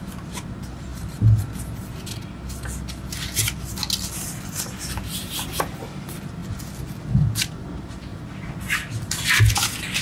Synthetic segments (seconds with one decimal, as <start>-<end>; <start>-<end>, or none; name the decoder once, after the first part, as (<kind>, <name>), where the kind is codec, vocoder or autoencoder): none